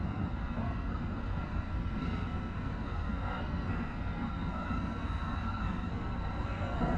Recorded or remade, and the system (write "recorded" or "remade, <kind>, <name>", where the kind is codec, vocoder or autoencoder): remade, codec, SNAC